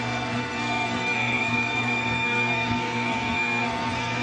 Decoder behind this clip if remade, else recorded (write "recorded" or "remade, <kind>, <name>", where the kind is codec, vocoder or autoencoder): remade, codec, SNAC